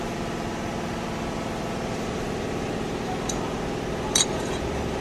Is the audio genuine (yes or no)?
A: no